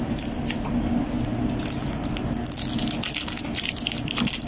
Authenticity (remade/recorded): recorded